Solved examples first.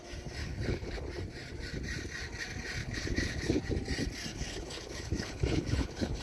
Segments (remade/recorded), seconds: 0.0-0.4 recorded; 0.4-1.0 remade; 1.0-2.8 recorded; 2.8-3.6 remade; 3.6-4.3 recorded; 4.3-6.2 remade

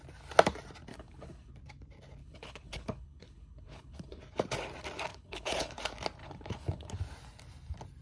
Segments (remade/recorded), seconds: 0.0-0.9 recorded; 0.9-1.5 remade; 1.5-2.2 recorded; 2.2-4.2 remade; 4.2-5.1 recorded; 5.1-5.7 remade; 5.7-6.2 recorded; 6.2-7.0 remade; 7.0-8.0 recorded